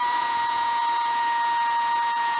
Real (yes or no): no